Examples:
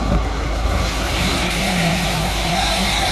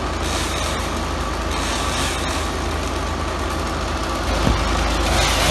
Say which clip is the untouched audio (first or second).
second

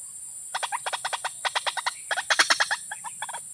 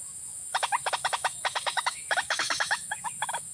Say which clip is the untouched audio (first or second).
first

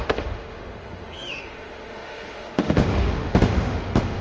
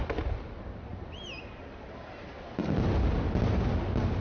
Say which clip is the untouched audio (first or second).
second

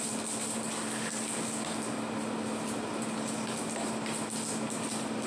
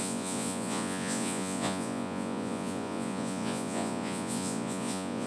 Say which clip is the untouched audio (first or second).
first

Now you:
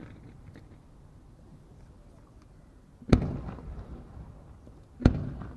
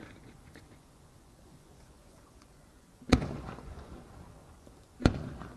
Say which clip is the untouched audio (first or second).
first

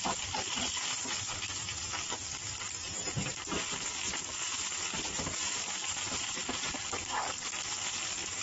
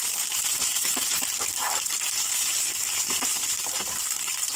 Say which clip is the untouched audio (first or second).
first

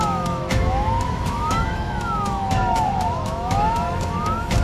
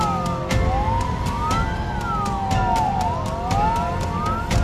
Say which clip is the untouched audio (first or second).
second